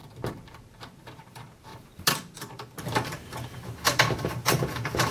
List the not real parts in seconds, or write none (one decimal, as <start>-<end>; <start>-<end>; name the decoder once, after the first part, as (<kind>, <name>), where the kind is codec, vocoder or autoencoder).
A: 0.7-5.1 (vocoder, BigVGAN v2)